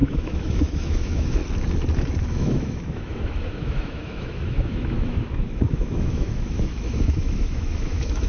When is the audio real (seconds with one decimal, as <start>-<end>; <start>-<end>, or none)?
1.4-2.3